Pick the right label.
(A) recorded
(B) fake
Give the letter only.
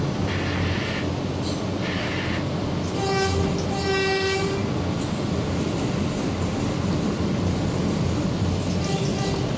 A